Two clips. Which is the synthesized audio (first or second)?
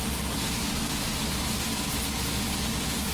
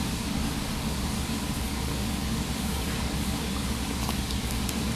second